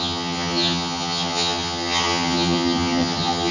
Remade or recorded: remade